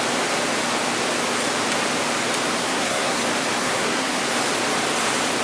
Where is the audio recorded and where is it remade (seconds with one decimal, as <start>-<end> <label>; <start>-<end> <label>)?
0.0-2.6 recorded; 2.6-3.2 remade; 3.2-3.6 recorded; 3.6-4.2 remade; 4.2-5.4 recorded